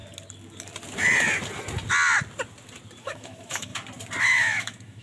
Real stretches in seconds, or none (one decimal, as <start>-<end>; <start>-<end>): 0.0-3.0; 3.7-4.2